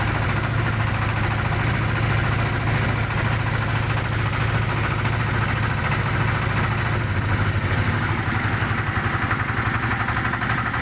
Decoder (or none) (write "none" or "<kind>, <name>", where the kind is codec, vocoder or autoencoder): none